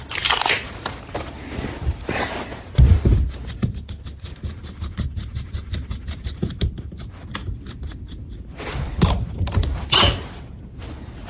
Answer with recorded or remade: recorded